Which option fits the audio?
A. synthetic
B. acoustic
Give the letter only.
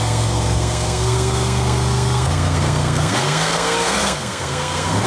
A